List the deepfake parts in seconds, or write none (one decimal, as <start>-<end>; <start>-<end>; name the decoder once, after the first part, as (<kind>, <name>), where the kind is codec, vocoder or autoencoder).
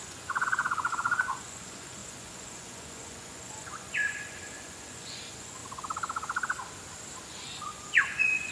0.0-5.6 (vocoder, Vocos); 7.2-8.5